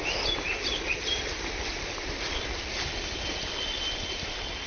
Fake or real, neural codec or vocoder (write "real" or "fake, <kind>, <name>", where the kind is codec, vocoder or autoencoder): real